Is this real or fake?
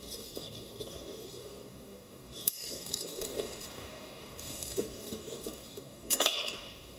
fake